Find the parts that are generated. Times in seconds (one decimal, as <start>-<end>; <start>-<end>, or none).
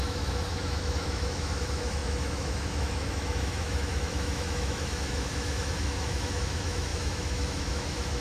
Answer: 0.0-8.2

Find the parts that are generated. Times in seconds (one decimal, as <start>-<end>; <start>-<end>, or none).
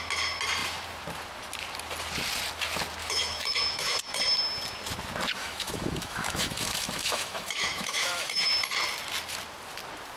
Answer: 3.0-4.2; 5.4-8.5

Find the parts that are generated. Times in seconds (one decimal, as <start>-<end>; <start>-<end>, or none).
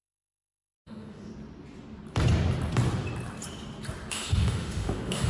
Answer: 0.0-1.3; 4.1-5.3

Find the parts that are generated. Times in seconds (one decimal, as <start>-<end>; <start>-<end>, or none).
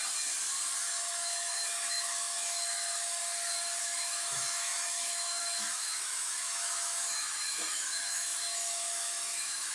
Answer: 0.8-3.2; 3.8-9.7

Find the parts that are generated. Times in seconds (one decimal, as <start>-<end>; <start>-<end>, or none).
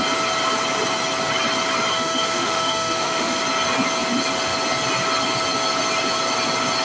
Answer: 1.9-3.4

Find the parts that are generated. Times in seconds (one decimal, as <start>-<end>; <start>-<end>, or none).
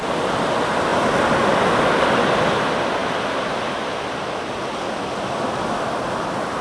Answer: none